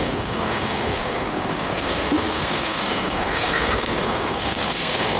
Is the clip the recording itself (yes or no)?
no